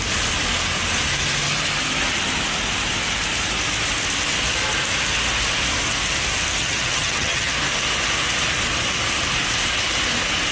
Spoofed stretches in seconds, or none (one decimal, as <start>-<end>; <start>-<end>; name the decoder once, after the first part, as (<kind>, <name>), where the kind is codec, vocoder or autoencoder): 6.6-7.5 (vocoder, HiFi-GAN)

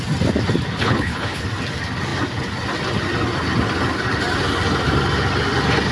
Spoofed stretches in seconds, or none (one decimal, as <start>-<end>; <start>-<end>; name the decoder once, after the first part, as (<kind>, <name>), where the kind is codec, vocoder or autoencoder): 0.8-1.4 (codec, HILCodec)

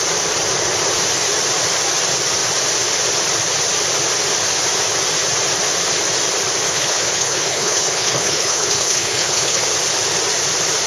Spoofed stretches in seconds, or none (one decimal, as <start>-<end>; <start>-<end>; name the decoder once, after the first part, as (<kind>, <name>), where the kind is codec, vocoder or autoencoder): 6.7-9.6 (codec, HILCodec)

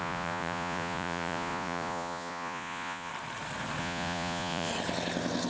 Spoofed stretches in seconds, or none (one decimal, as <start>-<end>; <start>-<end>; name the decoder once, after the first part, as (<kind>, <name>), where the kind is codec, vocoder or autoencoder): 0.0-3.1 (vocoder, Vocos); 3.8-4.7

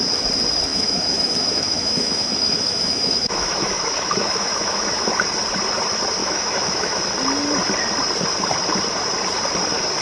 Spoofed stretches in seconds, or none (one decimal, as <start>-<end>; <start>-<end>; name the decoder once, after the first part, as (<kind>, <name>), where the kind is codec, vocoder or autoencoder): 0.7-5.1 (autoencoder, DAC-VAE); 6.2-7.0

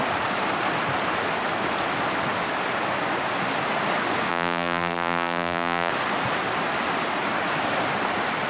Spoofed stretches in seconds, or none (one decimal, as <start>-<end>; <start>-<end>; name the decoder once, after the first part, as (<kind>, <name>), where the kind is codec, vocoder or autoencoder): 4.3-5.9 (vocoder, BigVGAN v2)

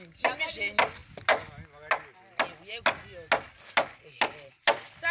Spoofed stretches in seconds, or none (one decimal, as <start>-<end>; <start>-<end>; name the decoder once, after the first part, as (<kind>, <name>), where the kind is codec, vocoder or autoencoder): none

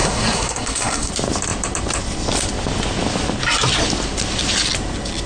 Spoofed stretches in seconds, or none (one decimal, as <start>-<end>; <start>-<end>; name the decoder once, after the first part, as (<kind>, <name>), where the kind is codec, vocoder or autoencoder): 0.0-1.1 (codec, SNAC)